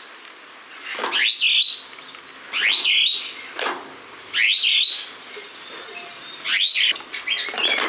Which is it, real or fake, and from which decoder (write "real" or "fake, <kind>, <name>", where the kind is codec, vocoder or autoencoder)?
real